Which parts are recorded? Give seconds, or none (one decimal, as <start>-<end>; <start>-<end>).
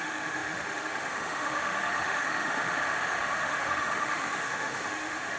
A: none